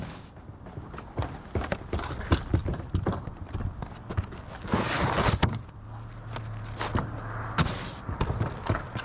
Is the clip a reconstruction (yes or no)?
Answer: no